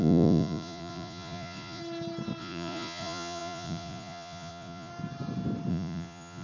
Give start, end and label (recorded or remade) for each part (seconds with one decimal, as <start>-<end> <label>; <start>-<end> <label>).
0.0-1.8 remade; 1.8-2.4 recorded; 2.4-4.9 remade; 4.9-5.7 recorded; 5.7-6.4 remade